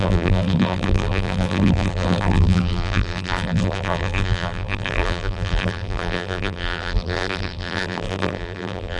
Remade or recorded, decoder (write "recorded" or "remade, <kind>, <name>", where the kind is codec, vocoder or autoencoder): remade, vocoder, BigVGAN v2